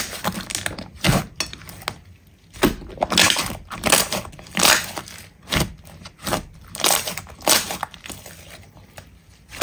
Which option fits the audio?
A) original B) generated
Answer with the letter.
A